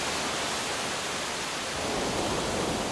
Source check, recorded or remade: recorded